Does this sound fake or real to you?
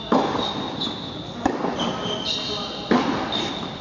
real